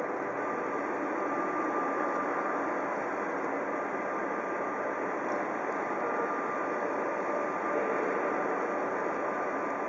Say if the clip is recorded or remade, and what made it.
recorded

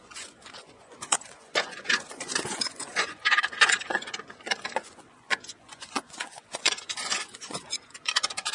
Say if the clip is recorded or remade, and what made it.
remade, vocoder, Vocos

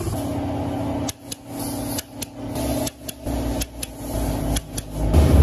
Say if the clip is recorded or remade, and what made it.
recorded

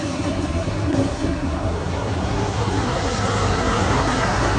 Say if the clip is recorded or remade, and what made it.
remade, codec, SNAC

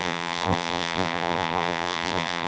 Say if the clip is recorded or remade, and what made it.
remade, vocoder, BigVGAN v2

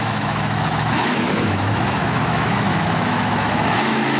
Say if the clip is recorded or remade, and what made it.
remade, autoencoder, DAC-VAE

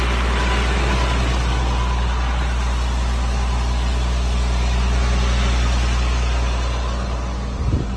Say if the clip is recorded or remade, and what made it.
recorded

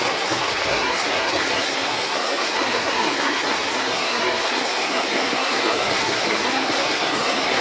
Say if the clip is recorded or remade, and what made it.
remade, codec, SNAC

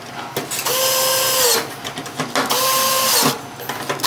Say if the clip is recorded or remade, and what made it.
recorded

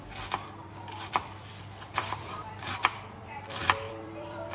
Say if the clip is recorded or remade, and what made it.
remade, vocoder, BigVGAN v2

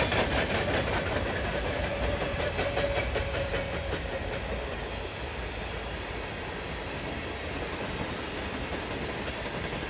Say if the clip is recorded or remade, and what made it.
recorded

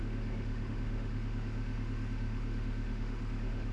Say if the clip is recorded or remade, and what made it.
remade, autoencoder, DAC-VAE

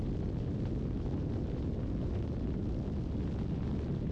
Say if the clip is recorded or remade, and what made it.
recorded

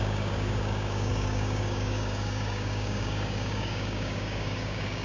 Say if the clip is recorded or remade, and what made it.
remade, codec, DAC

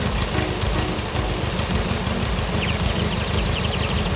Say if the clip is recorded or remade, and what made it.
recorded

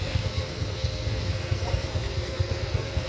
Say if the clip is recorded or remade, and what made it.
remade, codec, SNAC